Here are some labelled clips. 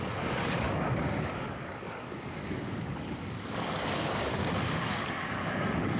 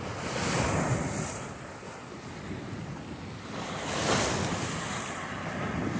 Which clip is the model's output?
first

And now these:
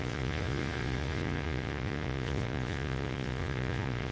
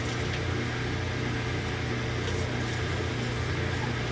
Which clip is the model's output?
first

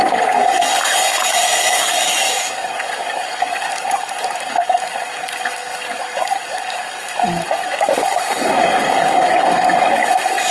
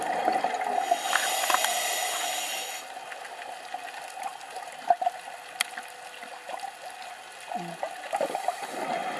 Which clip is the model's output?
first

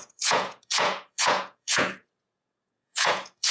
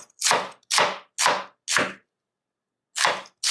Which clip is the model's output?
first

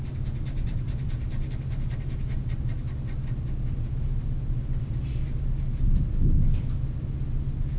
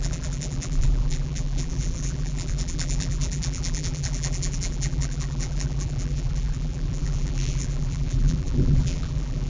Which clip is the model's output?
second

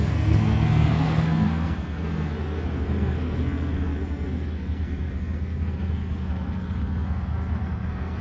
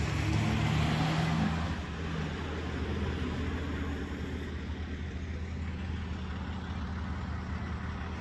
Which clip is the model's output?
first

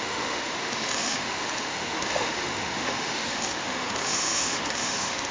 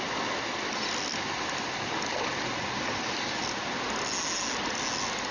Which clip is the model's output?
first